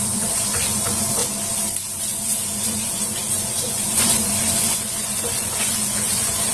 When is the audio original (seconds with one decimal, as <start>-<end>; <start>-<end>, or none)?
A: 1.2-2.0